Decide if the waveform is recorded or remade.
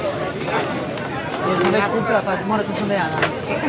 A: recorded